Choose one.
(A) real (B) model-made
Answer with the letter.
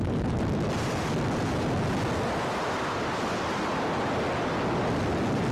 A